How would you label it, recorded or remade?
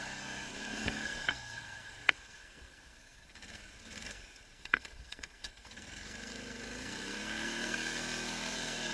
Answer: remade